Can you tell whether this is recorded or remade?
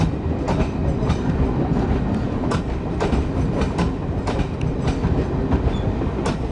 recorded